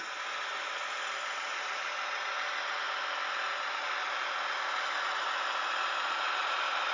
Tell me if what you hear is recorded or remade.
recorded